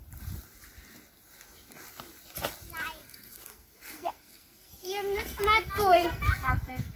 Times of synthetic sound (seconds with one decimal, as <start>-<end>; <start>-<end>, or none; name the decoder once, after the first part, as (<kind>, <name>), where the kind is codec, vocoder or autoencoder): 3.0-7.0 (codec, SNAC)

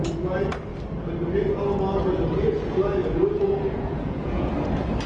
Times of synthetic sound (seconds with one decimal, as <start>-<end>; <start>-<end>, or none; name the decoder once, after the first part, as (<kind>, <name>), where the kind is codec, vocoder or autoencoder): 3.0-4.5 (vocoder, Vocos)

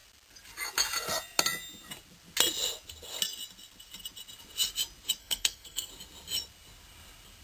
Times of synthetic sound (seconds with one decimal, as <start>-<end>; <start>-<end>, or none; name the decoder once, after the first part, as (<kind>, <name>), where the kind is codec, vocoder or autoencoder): 5.2-5.9 (codec, SNAC)

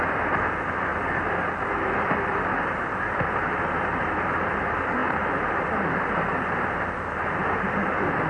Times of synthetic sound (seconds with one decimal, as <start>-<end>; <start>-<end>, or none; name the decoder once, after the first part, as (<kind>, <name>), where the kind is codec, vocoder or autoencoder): 0.0-0.9 (vocoder, BigVGAN v2); 2.4-5.0; 5.6-8.3

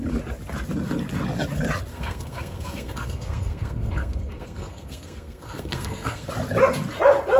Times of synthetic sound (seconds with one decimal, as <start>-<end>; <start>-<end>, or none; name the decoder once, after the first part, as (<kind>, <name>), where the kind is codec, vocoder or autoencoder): 1.9-6.3 (codec, SNAC)

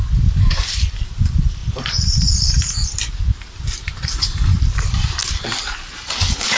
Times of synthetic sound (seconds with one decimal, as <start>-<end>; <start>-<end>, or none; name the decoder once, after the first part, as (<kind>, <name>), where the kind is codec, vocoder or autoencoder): 0.0-1.6 (vocoder, BigVGAN v2); 2.6-5.2